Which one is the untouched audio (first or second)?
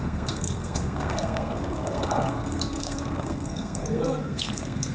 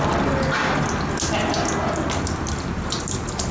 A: second